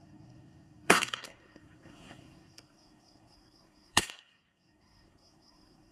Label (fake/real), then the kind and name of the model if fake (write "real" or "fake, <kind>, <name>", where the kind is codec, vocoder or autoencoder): fake, codec, SNAC